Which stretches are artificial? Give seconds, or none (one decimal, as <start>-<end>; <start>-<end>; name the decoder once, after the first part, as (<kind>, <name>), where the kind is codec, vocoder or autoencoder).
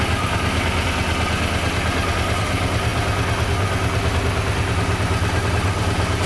none